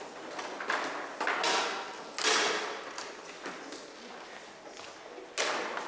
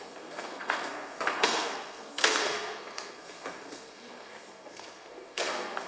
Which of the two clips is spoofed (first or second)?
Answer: second